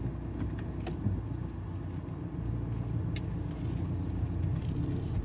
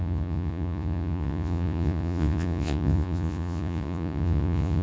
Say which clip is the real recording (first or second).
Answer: first